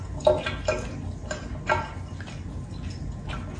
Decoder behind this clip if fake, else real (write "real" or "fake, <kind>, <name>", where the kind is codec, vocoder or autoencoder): real